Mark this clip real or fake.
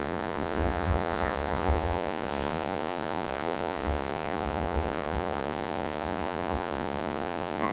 fake